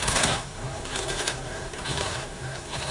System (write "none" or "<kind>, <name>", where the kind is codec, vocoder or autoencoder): codec, SNAC